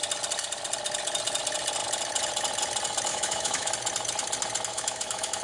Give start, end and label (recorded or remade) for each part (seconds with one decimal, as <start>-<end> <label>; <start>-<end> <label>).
0.0-3.1 recorded; 3.1-3.7 remade; 3.7-4.7 recorded; 4.7-5.4 remade